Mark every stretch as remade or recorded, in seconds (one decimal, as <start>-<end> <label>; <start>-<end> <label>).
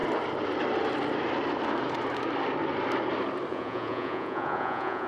0.0-3.5 recorded; 3.5-5.1 remade